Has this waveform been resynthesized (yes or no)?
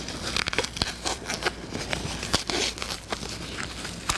no